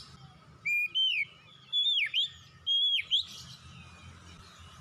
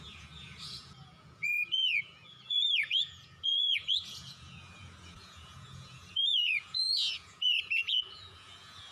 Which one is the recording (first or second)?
first